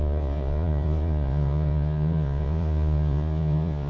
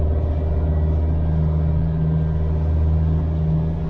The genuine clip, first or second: second